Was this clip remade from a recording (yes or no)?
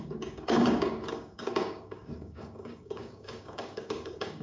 yes